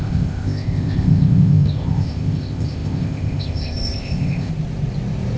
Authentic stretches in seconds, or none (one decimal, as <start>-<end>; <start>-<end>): 4.5-5.4

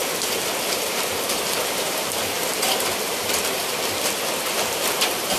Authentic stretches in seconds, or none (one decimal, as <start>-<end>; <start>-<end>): 0.0-0.8; 3.7-4.5

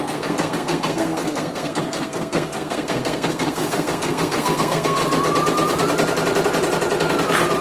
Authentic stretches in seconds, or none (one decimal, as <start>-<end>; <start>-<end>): 5.0-7.6

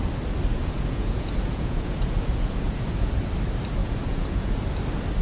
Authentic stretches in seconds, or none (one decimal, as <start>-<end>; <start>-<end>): 0.0-0.5; 3.1-3.8; 4.6-5.2